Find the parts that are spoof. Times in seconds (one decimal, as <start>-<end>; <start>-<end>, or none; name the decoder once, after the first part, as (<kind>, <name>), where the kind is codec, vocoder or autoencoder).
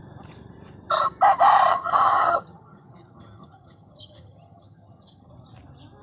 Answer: 1.7-5.3 (vocoder, HiFi-GAN)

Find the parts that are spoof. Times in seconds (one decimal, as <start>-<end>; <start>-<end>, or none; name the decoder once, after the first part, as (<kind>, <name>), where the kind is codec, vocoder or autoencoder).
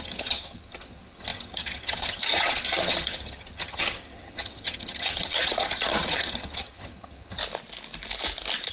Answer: 0.0-7.4 (vocoder, HiFi-GAN)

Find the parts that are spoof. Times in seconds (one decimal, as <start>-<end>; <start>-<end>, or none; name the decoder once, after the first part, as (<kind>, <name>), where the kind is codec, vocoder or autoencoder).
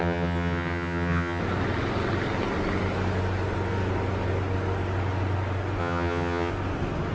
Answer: 0.0-1.4 (vocoder, HiFi-GAN); 5.8-6.5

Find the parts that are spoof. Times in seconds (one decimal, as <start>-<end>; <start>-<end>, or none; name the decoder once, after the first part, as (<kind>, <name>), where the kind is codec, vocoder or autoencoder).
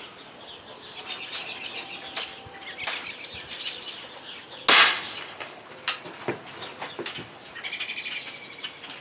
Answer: none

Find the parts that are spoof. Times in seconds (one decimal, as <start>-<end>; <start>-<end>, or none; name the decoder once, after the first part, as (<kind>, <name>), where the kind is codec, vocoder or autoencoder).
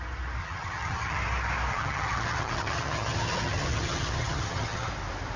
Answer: 0.4-1.2 (vocoder, HiFi-GAN); 1.7-4.9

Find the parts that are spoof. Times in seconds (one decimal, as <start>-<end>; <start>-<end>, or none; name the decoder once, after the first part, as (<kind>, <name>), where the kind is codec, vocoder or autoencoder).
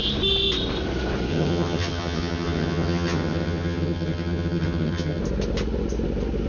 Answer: 1.3-5.2 (vocoder, HiFi-GAN)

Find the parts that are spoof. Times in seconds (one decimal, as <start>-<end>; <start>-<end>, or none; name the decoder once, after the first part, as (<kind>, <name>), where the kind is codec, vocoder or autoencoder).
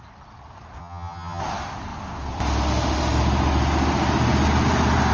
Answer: 0.8-1.4 (vocoder, HiFi-GAN)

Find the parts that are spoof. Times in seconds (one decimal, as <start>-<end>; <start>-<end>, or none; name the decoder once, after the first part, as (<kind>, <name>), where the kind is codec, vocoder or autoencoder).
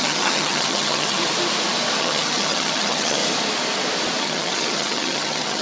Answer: 0.0-1.2 (vocoder, HiFi-GAN); 2.0-3.2; 4.2-5.6